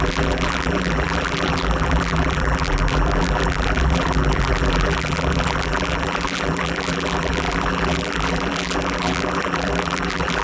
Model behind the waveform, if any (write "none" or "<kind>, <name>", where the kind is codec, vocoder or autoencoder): vocoder, BigVGAN v2